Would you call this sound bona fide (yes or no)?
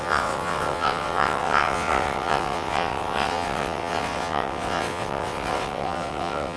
no